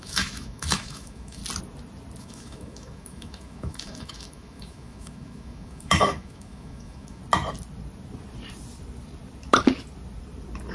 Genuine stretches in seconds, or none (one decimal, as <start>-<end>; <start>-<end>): 1.4-2.2; 7.2-10.7